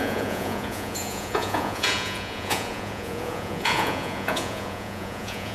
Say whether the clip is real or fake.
fake